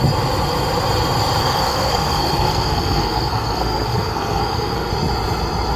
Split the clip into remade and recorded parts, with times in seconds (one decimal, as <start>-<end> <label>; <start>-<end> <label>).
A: 0.0-1.4 recorded; 1.4-4.9 remade; 4.9-5.8 recorded